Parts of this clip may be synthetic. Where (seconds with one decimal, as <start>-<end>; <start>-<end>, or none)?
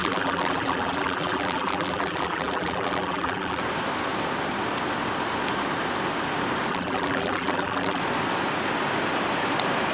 0.0-3.6; 6.7-8.0